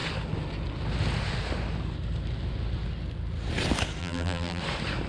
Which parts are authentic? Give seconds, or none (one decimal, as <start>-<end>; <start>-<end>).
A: 0.0-4.0; 4.6-5.1